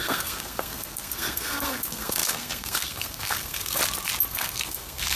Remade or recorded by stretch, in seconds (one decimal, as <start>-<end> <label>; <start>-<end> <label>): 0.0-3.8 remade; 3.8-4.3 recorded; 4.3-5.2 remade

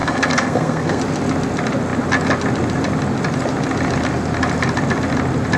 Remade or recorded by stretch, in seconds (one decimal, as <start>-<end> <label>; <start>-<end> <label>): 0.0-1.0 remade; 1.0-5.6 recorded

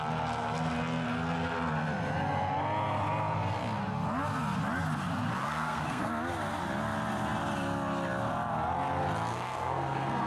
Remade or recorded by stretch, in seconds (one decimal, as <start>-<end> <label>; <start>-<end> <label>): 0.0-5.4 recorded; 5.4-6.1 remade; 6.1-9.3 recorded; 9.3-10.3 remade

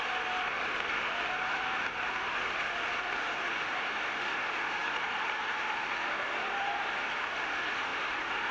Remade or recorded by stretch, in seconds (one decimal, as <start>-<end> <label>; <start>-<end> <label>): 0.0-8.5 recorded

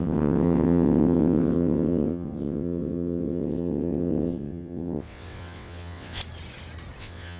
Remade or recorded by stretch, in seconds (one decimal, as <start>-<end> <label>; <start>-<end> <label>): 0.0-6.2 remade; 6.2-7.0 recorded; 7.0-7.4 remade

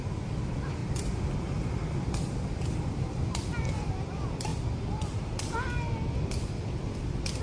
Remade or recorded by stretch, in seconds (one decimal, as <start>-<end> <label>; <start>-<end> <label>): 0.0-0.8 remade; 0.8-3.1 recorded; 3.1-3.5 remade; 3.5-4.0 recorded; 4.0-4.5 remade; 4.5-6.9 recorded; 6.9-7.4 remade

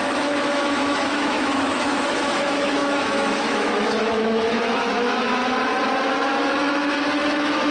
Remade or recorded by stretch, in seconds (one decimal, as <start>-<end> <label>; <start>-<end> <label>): 0.0-5.4 remade; 5.4-6.6 recorded; 6.6-7.7 remade